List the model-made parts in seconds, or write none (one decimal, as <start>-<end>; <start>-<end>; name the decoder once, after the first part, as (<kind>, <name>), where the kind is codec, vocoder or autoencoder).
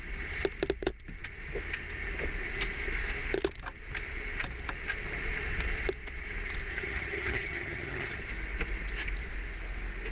6.7-8.2 (vocoder, HiFi-GAN)